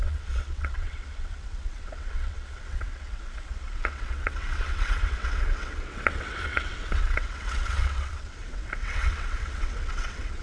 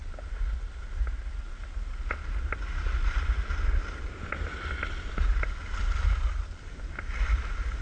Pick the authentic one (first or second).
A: second